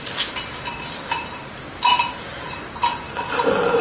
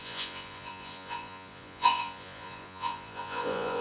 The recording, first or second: first